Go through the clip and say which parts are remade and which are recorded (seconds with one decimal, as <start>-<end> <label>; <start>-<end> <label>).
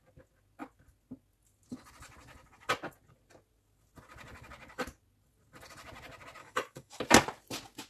0.0-6.4 recorded; 6.4-7.0 remade; 7.0-7.9 recorded